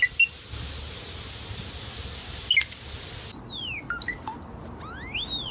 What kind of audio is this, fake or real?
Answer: real